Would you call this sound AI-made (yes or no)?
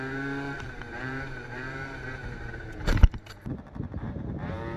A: yes